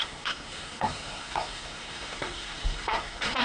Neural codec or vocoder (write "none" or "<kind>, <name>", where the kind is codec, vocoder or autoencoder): codec, SNAC